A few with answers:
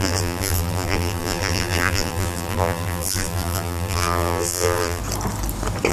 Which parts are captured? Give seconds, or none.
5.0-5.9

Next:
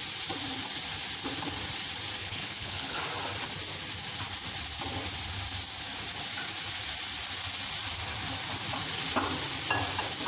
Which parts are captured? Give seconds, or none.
0.0-2.2; 3.0-10.3

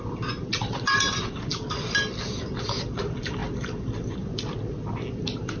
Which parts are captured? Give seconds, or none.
0.0-5.6

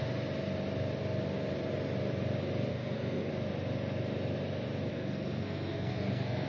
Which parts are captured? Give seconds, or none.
0.0-2.7; 3.3-4.9

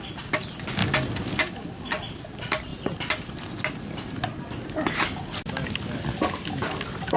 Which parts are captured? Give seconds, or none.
0.0-7.2

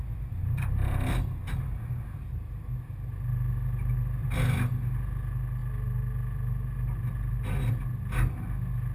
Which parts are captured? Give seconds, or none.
0.0-0.4; 1.8-4.2; 4.7-8.9